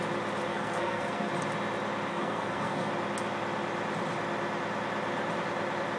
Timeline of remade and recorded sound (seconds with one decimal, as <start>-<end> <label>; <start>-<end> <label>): 0.0-0.5 recorded; 0.5-1.3 remade; 1.3-2.1 recorded; 2.1-2.9 remade; 2.9-6.0 recorded